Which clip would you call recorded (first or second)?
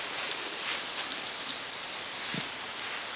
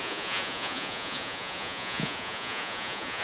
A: first